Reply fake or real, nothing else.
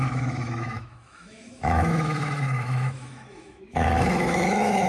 fake